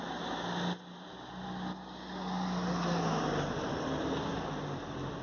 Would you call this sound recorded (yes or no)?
yes